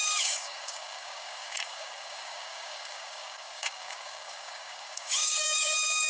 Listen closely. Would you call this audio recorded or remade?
remade